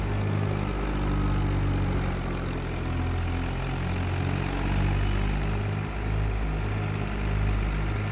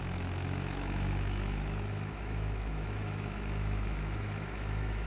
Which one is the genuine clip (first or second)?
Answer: first